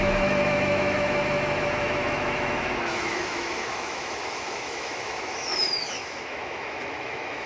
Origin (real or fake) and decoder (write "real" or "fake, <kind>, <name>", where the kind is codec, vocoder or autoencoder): fake, autoencoder, DAC-VAE